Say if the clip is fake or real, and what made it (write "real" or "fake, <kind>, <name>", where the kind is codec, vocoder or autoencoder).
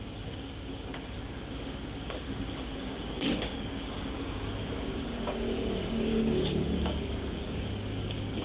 fake, codec, DAC